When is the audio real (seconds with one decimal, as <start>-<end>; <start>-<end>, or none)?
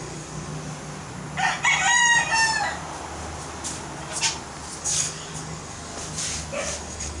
0.5-4.8; 5.9-6.8